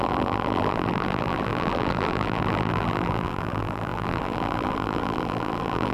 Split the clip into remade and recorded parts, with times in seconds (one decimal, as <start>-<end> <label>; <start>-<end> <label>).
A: 0.0-5.9 remade